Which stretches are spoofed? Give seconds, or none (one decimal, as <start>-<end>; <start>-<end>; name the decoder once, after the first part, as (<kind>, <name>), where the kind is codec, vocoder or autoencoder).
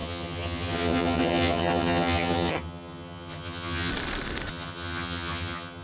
0.0-3.9 (vocoder, HiFi-GAN); 4.5-5.8